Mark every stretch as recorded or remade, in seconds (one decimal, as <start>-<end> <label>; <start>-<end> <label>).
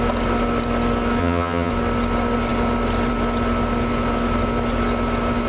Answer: 0.0-1.2 recorded; 1.2-1.7 remade; 1.7-5.5 recorded